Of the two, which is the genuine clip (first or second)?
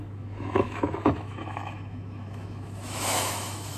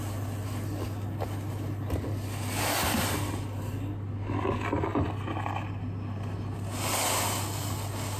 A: second